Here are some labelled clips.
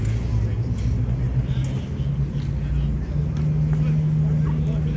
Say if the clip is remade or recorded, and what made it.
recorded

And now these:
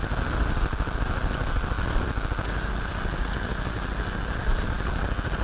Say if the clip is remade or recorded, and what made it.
recorded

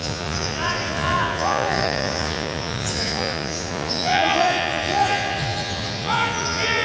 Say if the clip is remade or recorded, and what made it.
remade, vocoder, Vocos